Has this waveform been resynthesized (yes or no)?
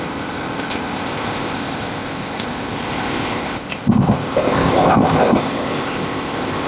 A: yes